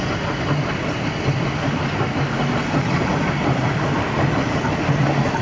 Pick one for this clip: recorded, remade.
recorded